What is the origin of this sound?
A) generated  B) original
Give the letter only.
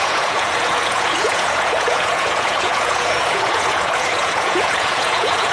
A